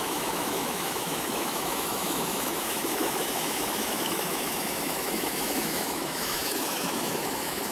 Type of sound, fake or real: fake